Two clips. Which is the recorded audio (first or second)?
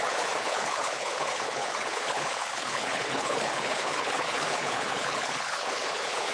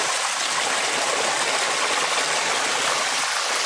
second